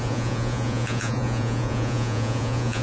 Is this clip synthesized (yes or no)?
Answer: yes